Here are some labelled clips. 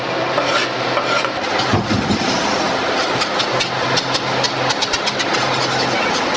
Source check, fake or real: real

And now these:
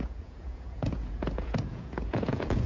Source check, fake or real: fake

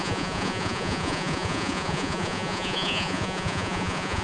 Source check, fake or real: fake